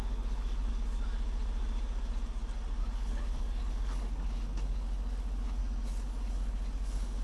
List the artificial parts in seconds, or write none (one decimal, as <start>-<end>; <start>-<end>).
0.0-0.7; 2.8-5.6; 6.3-7.2